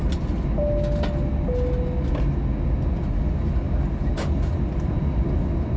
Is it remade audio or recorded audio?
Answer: recorded